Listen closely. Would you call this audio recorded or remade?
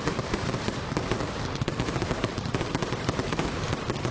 remade